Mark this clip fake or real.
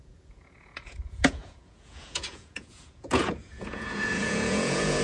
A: fake